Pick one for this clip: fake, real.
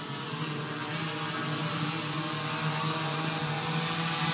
real